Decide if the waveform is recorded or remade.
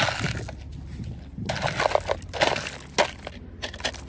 recorded